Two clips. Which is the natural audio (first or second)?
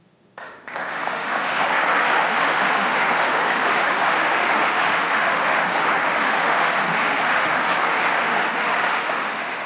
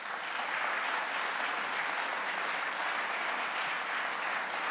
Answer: second